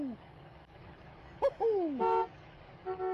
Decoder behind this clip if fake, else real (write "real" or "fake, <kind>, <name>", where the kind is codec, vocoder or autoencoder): fake, codec, DAC